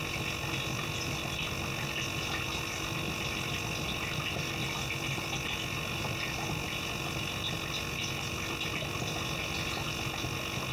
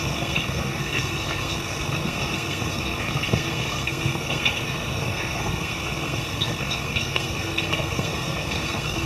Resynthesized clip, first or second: second